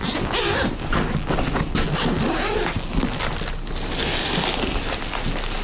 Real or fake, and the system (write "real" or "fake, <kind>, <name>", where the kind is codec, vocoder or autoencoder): real